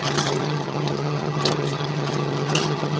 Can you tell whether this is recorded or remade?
remade